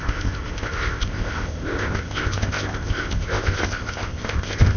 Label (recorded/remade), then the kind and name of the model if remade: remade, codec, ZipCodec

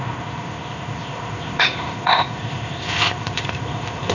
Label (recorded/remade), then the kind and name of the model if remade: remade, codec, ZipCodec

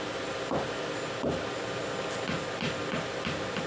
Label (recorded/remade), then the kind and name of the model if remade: recorded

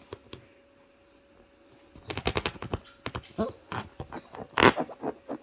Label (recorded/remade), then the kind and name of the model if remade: recorded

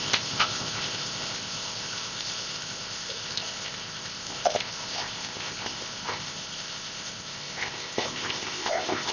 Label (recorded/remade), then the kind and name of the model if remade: remade, codec, ZipCodec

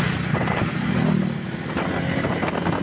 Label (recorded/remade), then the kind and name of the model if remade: recorded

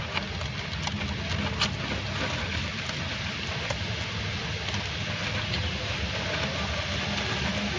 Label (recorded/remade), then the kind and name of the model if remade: recorded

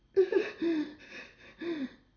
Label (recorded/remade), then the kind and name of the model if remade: recorded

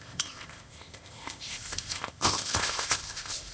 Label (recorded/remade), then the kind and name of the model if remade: remade, codec, ZipCodec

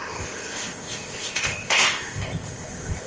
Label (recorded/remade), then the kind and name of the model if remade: remade, codec, ZipCodec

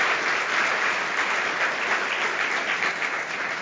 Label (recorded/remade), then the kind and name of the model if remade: recorded